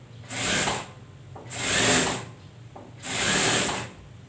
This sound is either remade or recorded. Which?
recorded